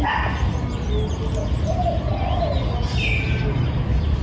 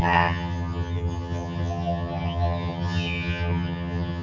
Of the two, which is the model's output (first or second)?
second